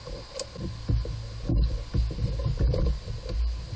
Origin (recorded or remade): recorded